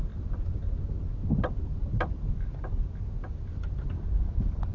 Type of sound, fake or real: real